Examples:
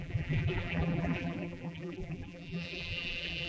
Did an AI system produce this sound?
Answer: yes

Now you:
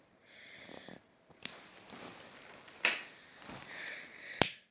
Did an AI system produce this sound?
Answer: yes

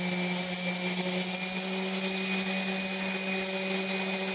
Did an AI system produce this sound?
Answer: no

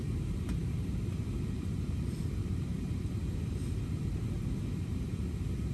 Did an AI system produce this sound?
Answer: yes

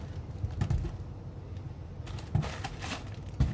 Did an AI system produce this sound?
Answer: no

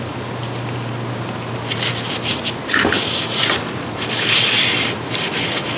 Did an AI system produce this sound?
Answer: yes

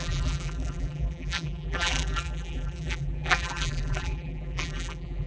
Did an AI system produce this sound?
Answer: yes